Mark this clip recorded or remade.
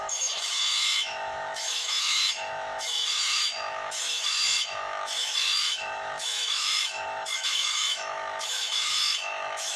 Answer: remade